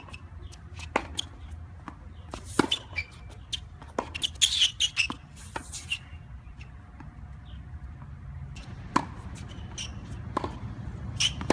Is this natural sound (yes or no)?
yes